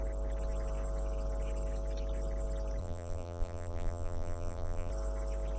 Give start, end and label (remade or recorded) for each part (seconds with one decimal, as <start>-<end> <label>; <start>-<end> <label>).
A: 0.0-2.8 recorded; 2.8-4.9 remade; 4.9-5.6 recorded